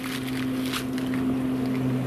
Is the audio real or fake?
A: real